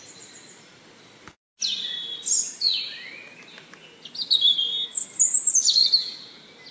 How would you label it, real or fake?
real